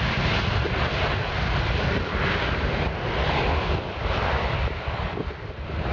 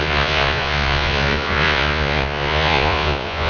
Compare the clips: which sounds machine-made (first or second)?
second